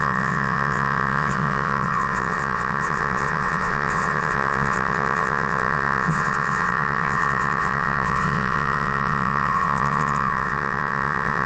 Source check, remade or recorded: remade